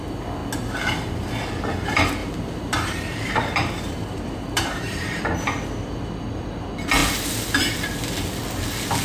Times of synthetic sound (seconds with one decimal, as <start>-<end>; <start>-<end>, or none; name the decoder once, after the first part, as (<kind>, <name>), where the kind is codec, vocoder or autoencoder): 2.2-5.2 (vocoder, BigVGAN v2)